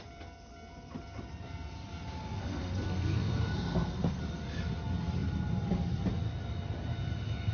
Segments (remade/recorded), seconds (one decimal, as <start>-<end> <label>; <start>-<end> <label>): 0.0-2.2 recorded; 2.2-4.2 remade; 4.2-7.5 recorded